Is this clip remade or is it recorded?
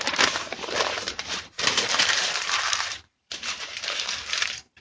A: remade